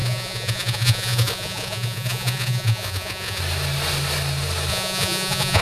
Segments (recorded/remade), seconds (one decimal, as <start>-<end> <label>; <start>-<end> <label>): 0.0-3.4 remade; 3.4-4.7 recorded; 4.7-5.6 remade